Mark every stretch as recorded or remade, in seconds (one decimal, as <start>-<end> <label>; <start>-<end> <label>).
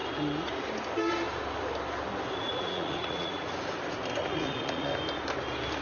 0.0-2.4 recorded; 2.4-3.5 remade; 3.5-4.2 recorded; 4.2-4.9 remade; 4.9-5.8 recorded